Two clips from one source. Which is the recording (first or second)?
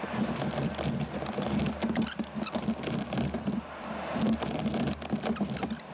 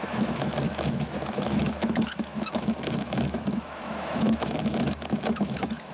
first